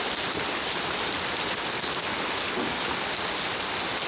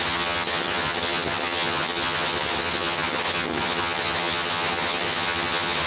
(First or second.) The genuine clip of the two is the first